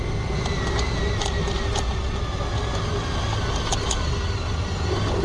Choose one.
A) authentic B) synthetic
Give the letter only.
A